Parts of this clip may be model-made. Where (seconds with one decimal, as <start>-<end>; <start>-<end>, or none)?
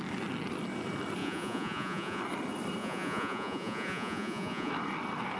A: 1.2-2.2; 2.8-4.7